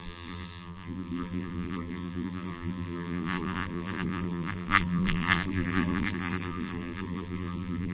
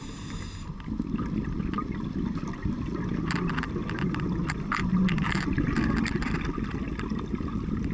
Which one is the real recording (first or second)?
second